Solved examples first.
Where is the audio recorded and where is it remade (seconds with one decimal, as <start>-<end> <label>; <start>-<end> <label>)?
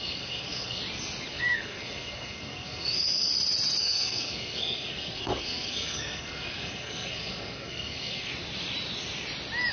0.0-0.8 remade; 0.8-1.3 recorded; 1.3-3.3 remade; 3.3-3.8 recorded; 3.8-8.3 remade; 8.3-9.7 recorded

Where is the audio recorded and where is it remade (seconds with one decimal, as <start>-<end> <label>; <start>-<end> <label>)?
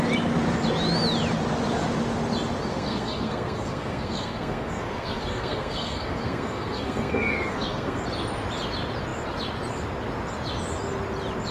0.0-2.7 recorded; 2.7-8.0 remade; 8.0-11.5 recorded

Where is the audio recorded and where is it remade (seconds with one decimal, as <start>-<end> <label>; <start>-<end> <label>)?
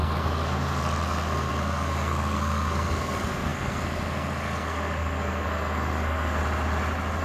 0.0-6.4 remade; 6.4-7.2 recorded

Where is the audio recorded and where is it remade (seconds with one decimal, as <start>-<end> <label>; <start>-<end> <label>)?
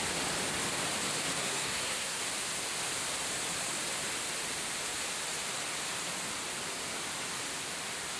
0.0-1.4 recorded; 1.4-2.2 remade; 2.2-8.2 recorded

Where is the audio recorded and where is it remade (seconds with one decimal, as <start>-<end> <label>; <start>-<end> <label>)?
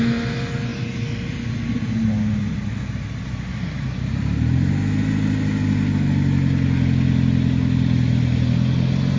0.0-9.2 recorded